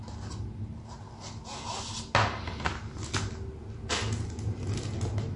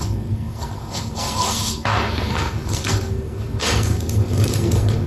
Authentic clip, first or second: first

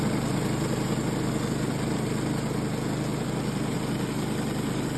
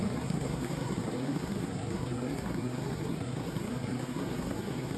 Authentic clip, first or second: first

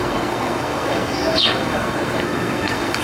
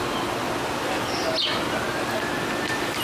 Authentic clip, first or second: second